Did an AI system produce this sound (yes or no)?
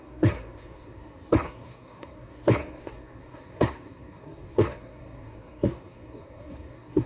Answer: yes